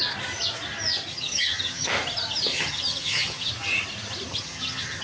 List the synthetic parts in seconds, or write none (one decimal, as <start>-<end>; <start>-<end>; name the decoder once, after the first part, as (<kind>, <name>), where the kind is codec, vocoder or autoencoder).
1.1-1.9 (vocoder, HiFi-GAN); 2.5-3.5; 4.3-5.0